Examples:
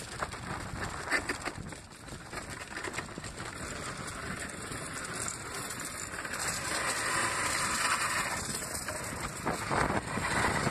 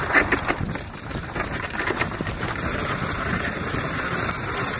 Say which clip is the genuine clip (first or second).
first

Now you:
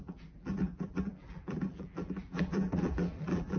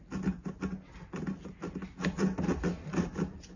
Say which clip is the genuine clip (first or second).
second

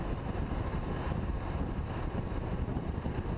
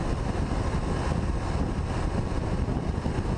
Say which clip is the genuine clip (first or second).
second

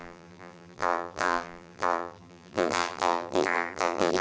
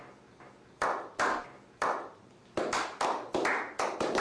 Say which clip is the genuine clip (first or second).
second